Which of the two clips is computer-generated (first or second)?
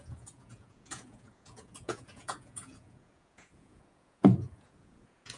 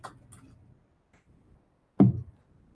first